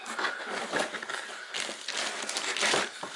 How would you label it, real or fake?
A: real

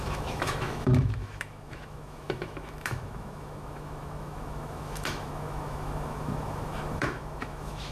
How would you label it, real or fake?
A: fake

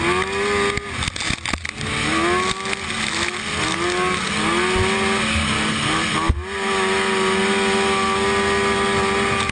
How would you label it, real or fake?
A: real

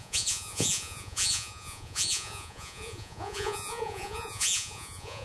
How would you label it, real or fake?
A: fake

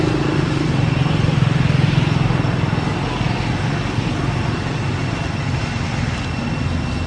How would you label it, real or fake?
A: real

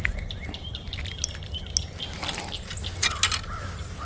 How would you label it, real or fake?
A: real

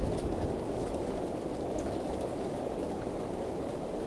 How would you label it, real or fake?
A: fake